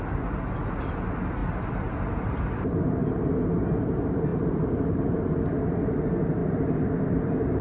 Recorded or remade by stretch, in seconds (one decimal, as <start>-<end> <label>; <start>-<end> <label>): 0.0-1.4 recorded; 1.4-1.9 remade; 1.9-4.3 recorded; 4.3-5.7 remade; 5.7-6.4 recorded; 6.4-7.6 remade